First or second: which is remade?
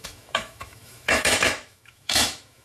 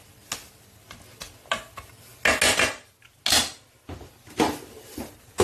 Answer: first